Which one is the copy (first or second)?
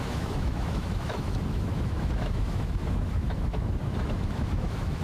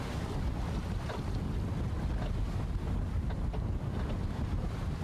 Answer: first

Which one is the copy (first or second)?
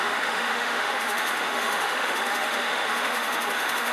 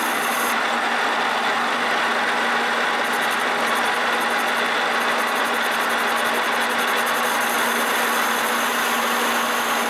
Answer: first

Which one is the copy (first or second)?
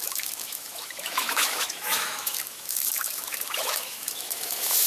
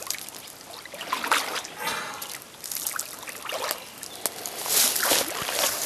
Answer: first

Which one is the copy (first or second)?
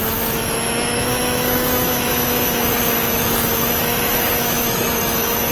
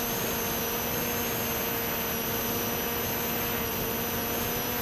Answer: first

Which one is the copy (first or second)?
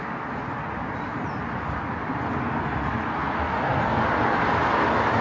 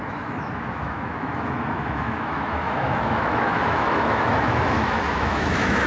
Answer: second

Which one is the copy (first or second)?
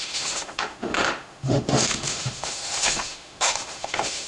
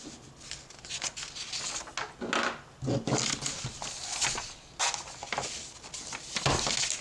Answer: first